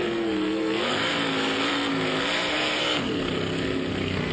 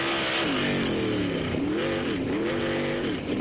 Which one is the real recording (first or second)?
second